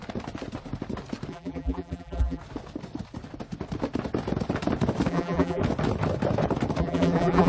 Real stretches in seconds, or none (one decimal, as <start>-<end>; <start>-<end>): 0.0-1.3; 2.4-5.1; 5.6-6.8